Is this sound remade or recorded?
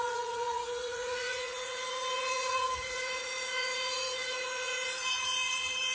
remade